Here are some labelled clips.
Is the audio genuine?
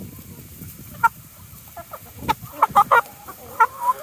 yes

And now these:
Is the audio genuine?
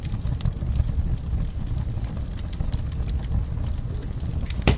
yes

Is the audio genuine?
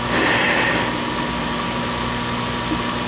yes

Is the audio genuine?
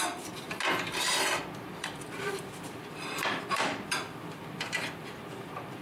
no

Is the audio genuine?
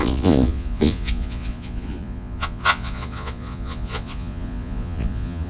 no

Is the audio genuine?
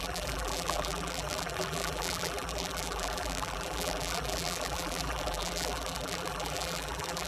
no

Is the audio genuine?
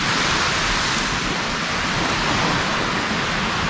yes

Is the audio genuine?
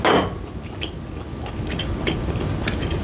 yes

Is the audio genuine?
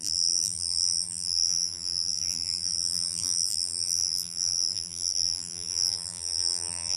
no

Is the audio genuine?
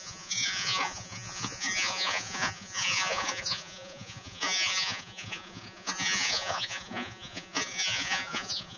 no